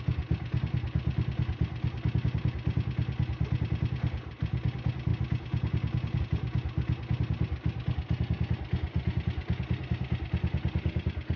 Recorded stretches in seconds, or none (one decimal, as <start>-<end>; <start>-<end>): 0.0-11.4